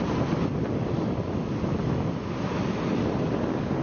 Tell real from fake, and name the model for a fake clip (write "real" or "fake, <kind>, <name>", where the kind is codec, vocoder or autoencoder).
real